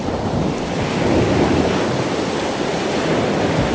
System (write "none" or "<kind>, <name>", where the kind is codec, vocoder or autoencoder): none